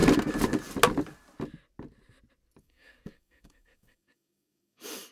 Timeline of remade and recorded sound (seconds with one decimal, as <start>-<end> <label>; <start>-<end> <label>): 0.0-2.6 recorded; 2.6-5.1 remade